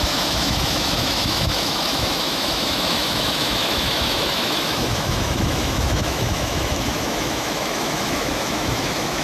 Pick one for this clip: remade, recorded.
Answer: remade